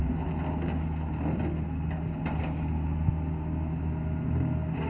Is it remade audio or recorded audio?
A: recorded